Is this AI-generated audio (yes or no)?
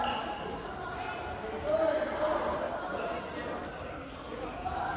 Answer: no